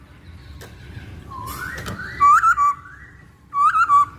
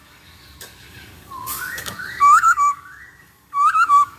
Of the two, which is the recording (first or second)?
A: first